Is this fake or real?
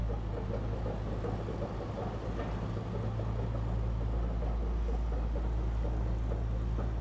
real